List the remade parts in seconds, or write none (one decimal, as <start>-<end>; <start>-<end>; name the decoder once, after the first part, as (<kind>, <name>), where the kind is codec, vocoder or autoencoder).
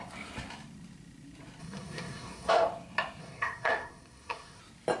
1.6-2.5 (codec, SNAC); 3.2-4.6